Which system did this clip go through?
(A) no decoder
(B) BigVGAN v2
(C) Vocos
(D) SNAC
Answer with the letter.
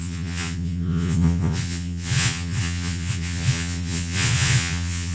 C